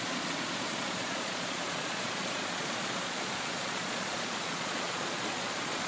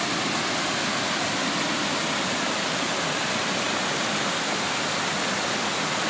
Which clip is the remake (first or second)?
first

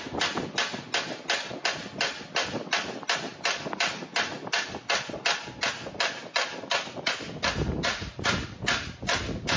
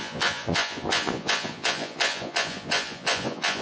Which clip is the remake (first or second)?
second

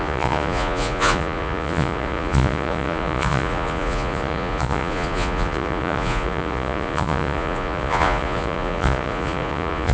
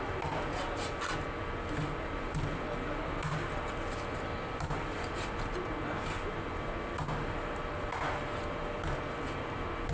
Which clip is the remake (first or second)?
first